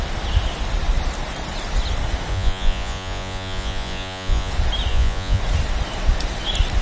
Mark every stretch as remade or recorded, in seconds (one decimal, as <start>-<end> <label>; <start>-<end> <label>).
0.0-2.3 recorded; 2.3-4.5 remade; 4.5-4.9 recorded; 4.9-5.4 remade; 5.4-6.8 recorded